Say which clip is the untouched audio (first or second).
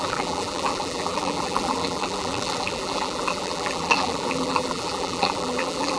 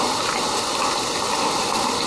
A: second